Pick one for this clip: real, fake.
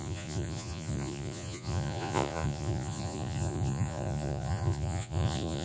fake